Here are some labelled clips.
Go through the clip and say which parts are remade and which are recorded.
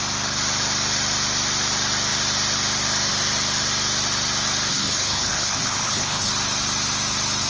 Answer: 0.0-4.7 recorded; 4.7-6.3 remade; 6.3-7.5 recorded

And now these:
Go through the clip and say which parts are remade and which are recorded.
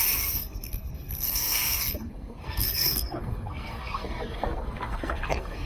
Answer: 0.0-5.7 remade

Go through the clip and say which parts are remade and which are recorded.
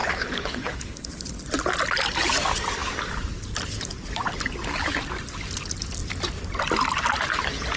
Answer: 0.0-1.4 remade; 1.4-7.8 recorded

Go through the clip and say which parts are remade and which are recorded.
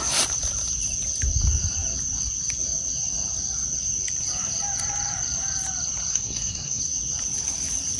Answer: 0.0-6.1 recorded; 6.1-6.8 remade; 6.8-8.0 recorded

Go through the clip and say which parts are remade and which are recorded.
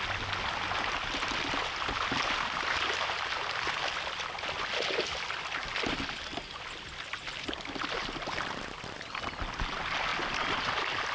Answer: 0.0-11.1 recorded